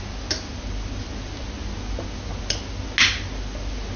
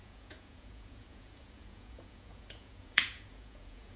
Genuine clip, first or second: first